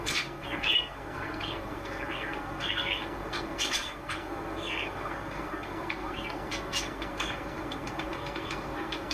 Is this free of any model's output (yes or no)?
no